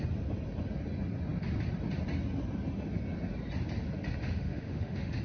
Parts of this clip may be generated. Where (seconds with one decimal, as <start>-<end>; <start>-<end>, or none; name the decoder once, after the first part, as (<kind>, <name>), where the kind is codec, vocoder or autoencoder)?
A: 4.2-5.2 (autoencoder, DAC-VAE)